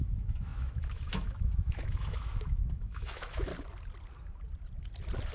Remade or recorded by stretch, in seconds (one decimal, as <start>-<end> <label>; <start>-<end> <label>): 0.0-3.5 remade; 3.5-5.3 recorded